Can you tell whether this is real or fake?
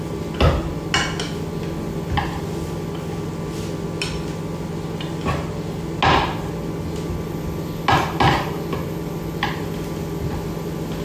real